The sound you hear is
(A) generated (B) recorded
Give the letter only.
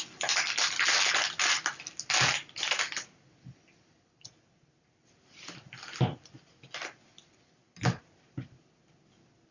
B